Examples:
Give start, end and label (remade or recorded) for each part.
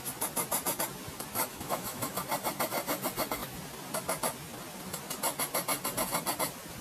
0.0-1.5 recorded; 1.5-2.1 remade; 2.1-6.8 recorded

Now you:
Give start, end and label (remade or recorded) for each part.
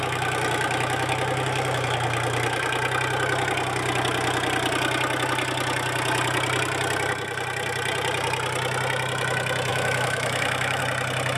0.0-9.7 recorded; 9.7-10.8 remade; 10.8-11.4 recorded